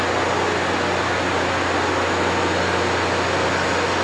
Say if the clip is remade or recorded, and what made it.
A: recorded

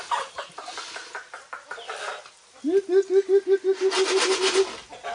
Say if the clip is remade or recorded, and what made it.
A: recorded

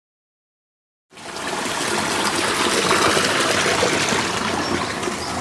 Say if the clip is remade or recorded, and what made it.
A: recorded